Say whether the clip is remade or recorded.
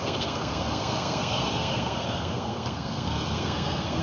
remade